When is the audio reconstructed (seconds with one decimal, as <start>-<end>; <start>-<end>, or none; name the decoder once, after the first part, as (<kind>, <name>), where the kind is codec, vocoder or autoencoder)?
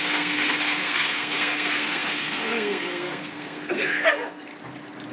0.0-4.5 (codec, SNAC)